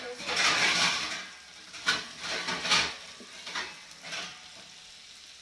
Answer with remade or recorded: recorded